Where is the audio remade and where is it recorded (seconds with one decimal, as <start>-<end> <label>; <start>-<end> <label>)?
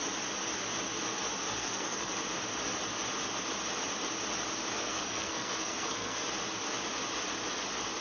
0.0-1.4 recorded; 1.4-2.1 remade; 2.1-4.7 recorded; 4.7-6.2 remade; 6.2-8.0 recorded